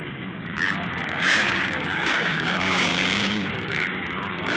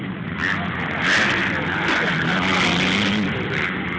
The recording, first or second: second